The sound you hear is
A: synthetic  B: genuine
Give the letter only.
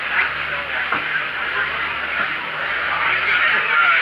A